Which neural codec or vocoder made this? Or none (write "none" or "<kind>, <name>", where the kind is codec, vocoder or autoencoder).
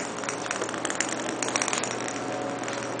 none